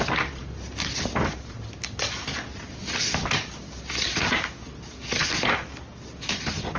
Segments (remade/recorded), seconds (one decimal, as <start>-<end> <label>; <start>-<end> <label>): 0.0-6.8 recorded